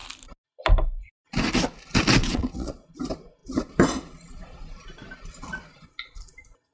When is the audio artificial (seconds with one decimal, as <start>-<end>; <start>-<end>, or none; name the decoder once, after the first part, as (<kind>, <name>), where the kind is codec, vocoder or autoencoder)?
2.2-2.8 (vocoder, WaveNeXt)